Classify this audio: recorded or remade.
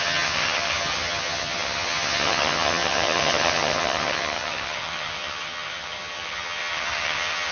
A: remade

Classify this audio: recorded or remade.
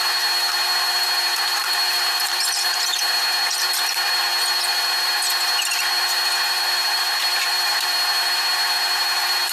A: remade